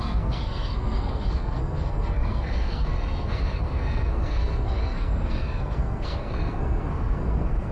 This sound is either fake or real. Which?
fake